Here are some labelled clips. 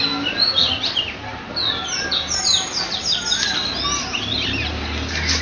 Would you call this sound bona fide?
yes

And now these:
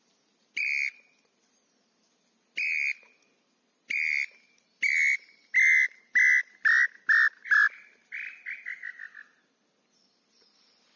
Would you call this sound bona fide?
yes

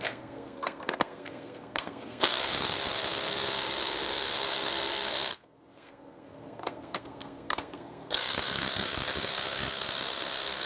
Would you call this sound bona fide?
no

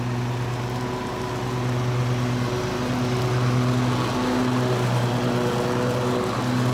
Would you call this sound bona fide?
yes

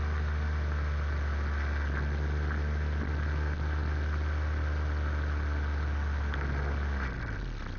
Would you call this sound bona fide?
yes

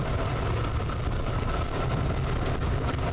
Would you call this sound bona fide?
yes